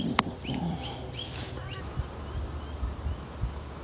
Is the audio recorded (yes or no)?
yes